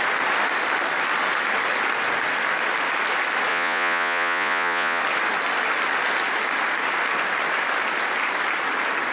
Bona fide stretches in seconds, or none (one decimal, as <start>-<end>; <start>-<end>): 0.0-3.5; 5.0-9.1